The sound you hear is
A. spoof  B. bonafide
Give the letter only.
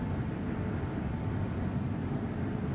B